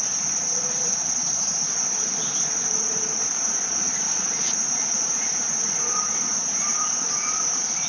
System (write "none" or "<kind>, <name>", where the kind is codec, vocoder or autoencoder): vocoder, Vocos